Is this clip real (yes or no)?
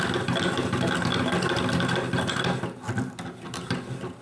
yes